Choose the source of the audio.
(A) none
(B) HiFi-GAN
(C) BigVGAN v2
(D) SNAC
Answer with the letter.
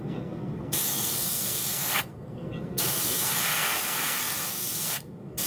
D